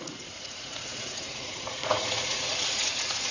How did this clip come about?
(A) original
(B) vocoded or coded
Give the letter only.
B